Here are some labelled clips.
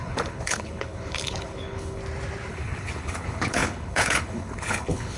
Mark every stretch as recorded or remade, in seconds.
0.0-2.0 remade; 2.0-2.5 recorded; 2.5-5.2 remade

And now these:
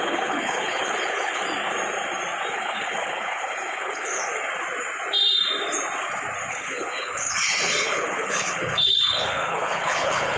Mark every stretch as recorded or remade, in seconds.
0.0-1.4 remade; 1.4-2.5 recorded; 2.5-4.2 remade; 4.2-6.5 recorded; 6.5-10.4 remade

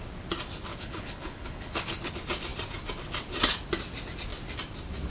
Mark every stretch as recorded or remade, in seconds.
0.0-0.7 recorded; 0.7-2.1 remade; 2.1-5.1 recorded

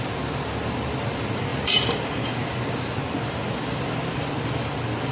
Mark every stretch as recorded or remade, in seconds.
0.0-5.1 recorded

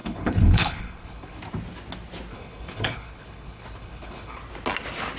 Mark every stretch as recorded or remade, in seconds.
0.0-1.4 remade; 1.4-2.3 recorded; 2.3-4.4 remade; 4.4-5.2 recorded

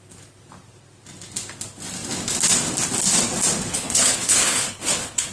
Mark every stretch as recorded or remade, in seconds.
0.0-3.7 recorded; 3.7-5.3 remade

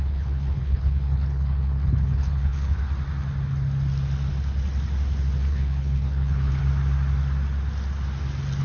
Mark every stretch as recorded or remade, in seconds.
0.0-2.8 remade; 2.8-5.5 recorded; 5.5-6.6 remade; 6.6-8.6 recorded

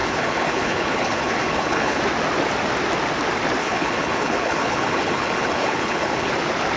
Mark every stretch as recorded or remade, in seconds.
0.0-2.0 remade; 2.0-3.6 recorded; 3.6-6.3 remade; 6.3-6.8 recorded